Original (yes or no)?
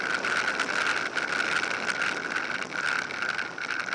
yes